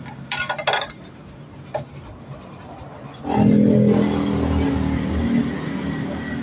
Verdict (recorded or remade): recorded